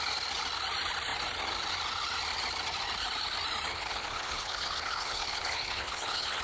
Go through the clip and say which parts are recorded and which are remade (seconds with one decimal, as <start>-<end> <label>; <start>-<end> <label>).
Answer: 0.0-3.7 recorded; 3.7-6.4 remade